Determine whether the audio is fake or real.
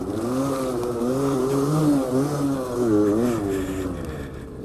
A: real